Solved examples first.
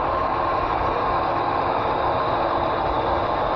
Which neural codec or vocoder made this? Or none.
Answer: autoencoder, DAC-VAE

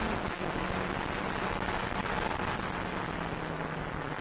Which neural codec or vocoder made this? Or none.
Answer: none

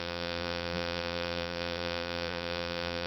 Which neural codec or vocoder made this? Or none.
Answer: vocoder, BigVGAN v2